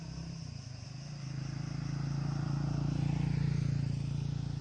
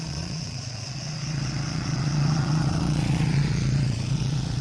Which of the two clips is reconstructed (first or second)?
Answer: second